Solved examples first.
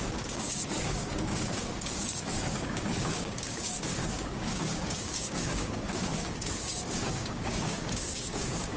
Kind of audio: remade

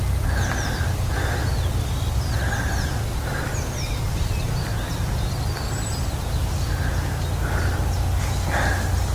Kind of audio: recorded